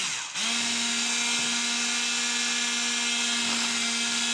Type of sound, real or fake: real